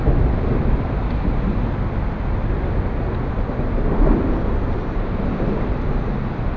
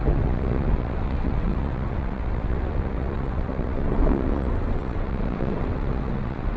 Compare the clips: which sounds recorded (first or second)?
first